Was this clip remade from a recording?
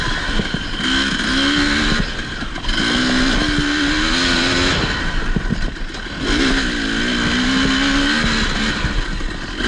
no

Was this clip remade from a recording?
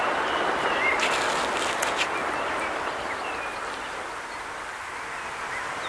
no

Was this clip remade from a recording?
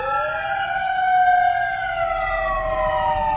no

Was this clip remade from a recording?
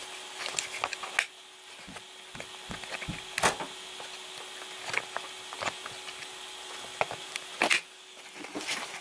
no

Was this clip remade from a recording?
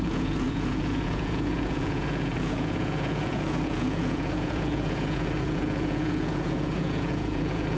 yes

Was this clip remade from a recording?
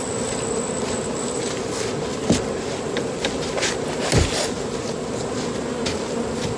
no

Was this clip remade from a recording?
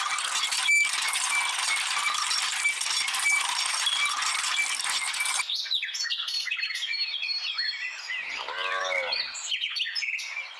no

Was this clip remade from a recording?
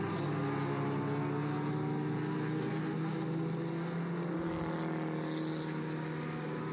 no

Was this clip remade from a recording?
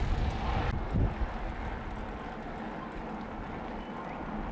no